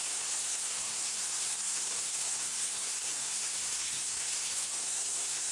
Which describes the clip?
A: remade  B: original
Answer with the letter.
A